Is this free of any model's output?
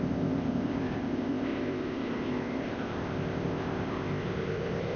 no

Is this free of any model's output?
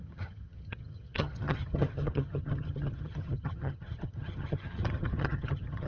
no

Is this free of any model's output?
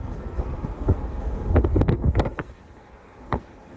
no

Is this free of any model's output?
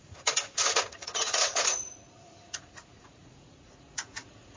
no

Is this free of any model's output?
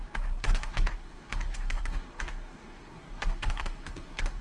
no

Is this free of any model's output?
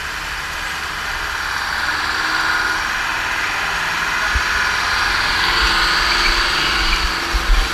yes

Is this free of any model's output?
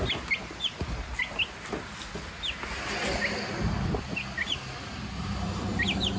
yes